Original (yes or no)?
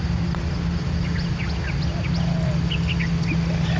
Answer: yes